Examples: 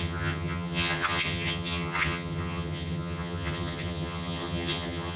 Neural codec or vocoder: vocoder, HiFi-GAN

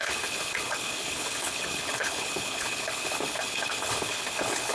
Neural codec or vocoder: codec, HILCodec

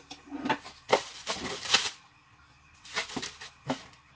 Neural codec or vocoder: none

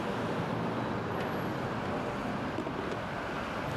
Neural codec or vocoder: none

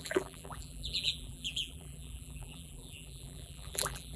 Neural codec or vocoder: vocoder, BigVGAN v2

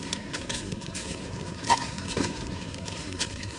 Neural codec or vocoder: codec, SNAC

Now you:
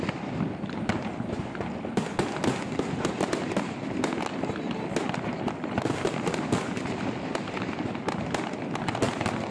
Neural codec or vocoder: none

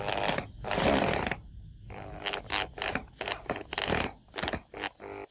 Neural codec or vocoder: none